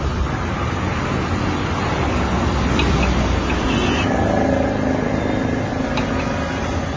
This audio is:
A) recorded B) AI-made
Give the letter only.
A